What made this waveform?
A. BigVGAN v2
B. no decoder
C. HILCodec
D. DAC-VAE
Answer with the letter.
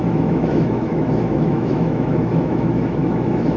D